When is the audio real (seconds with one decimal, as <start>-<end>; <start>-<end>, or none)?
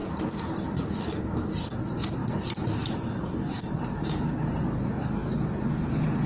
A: 0.0-6.3